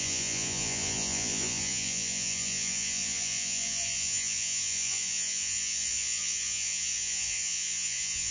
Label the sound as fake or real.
fake